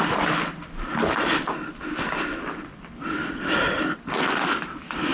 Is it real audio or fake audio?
real